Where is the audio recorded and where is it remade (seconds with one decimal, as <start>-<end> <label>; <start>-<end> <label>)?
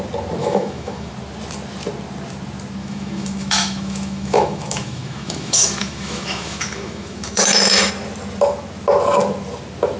0.0-0.4 recorded; 0.4-1.1 remade; 1.1-2.8 recorded; 2.8-7.9 remade; 7.9-10.0 recorded